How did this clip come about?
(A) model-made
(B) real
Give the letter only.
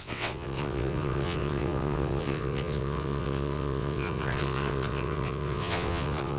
A